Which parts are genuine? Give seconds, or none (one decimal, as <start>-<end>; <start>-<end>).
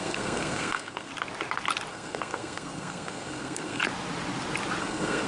1.1-1.9; 3.8-4.8